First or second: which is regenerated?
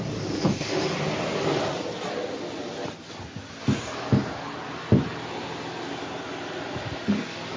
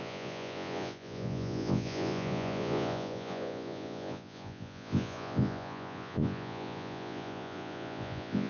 second